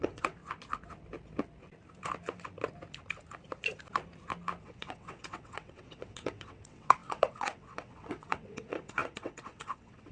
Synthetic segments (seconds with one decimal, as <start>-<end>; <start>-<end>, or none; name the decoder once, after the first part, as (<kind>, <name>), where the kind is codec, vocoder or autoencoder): 0.0-0.4 (vocoder, WaveNeXt); 4.6-10.1